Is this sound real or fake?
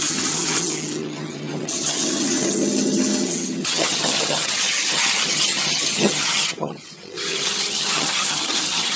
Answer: fake